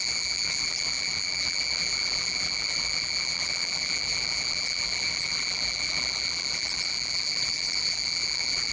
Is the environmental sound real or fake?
fake